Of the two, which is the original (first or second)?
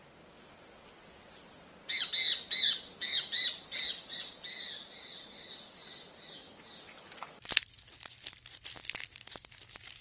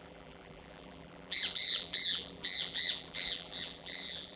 first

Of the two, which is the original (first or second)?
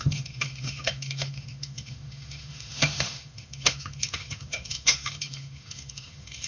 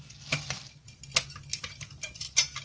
second